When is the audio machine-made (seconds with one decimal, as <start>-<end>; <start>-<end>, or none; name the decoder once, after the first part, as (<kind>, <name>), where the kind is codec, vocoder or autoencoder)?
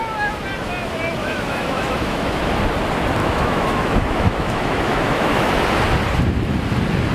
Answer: 1.2-2.5 (autoencoder, DAC-VAE); 3.2-5.5